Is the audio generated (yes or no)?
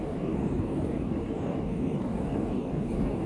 yes